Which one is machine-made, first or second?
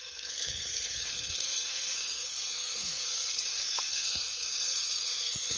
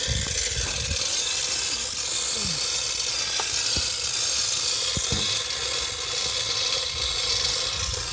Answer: first